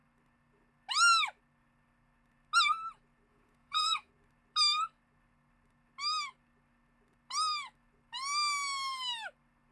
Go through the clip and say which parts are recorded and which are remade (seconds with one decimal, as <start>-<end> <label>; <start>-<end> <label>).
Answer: 0.0-3.3 recorded; 3.3-4.1 remade; 4.1-9.7 recorded